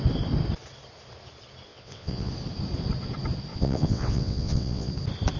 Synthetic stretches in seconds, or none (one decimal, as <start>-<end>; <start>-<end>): 1.7-2.3; 3.5-4.9

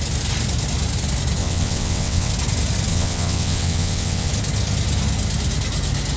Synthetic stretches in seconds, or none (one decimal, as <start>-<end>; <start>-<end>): 1.4-2.3; 2.9-4.3

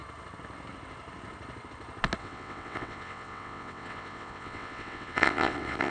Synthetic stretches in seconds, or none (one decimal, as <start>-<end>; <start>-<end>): 2.2-5.9

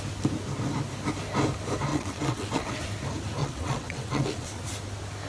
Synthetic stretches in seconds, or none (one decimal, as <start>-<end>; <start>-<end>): 1.9-2.8; 3.4-4.6

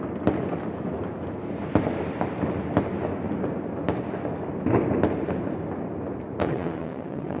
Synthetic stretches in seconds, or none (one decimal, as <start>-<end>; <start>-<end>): 6.4-7.4